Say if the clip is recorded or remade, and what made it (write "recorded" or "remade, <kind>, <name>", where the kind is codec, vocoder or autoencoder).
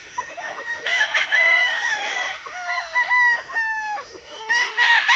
remade, autoencoder, DAC-VAE